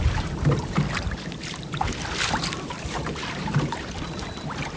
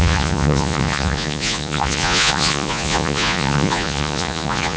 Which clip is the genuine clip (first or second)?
first